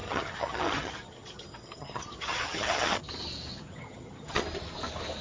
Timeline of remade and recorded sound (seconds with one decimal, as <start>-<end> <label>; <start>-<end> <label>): 0.0-3.1 remade; 3.1-3.5 recorded; 3.5-4.4 remade; 4.4-5.2 recorded